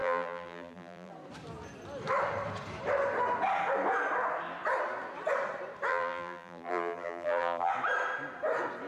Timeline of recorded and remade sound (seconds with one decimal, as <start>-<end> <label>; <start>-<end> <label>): 0.0-1.1 remade; 1.1-5.9 recorded; 5.9-7.7 remade; 7.7-8.9 recorded